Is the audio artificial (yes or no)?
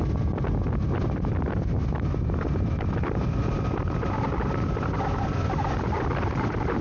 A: no